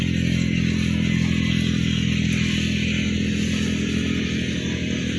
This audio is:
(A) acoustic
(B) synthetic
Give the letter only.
A